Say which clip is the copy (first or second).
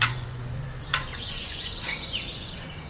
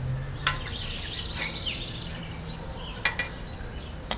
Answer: first